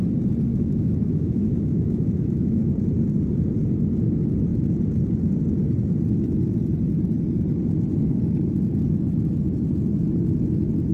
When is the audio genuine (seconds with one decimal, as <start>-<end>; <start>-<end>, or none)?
0.0-0.5; 2.7-10.9